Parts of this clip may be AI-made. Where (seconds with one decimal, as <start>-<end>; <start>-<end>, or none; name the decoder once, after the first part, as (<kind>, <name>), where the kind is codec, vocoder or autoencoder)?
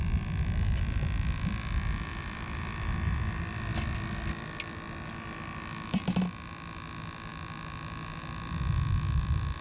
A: 2.1-2.6 (vocoder, BigVGAN v2)